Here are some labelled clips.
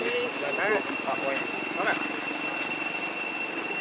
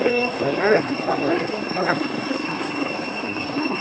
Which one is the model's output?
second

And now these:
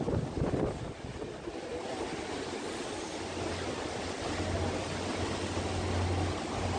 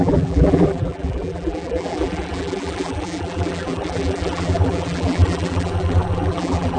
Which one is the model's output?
second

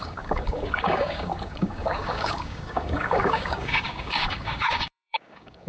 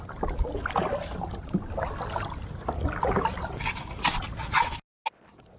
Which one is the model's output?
first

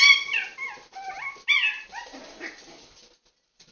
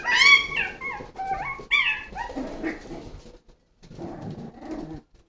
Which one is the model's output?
first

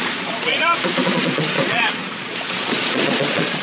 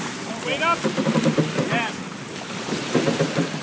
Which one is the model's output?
first